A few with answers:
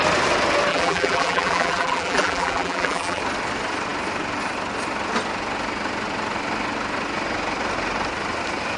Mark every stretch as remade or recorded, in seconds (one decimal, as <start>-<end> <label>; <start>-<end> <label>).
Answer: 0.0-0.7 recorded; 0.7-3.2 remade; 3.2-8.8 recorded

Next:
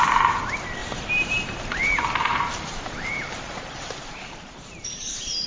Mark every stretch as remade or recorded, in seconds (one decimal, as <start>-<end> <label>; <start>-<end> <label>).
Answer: 0.0-0.8 recorded; 0.8-1.5 remade; 1.5-2.3 recorded; 2.3-5.5 remade

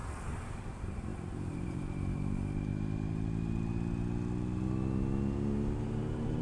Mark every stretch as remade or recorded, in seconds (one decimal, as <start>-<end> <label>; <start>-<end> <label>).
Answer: 0.0-0.6 recorded; 0.6-2.7 remade; 2.7-5.8 recorded; 5.8-6.4 remade

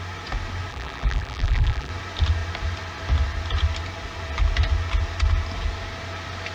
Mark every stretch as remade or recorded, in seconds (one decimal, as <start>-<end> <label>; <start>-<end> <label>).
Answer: 0.0-0.7 recorded; 0.7-1.9 remade; 1.9-6.5 recorded

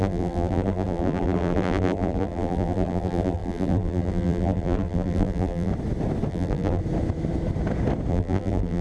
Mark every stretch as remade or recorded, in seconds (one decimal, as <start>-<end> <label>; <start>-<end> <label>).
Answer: 0.0-5.7 remade; 5.7-6.3 recorded; 6.3-6.8 remade; 6.8-8.1 recorded; 8.1-8.8 remade

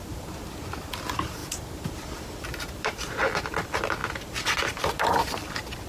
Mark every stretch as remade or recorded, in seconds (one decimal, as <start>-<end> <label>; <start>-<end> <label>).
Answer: 0.0-4.0 remade; 4.0-4.8 recorded; 4.8-5.9 remade